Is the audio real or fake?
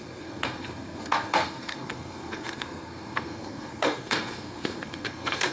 fake